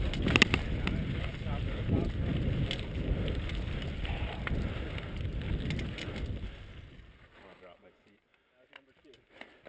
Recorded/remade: recorded